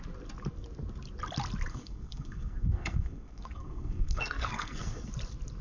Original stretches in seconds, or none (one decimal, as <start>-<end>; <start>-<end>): 0.0-1.7; 5.1-5.6